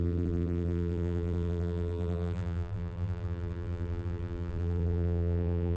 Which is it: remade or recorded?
remade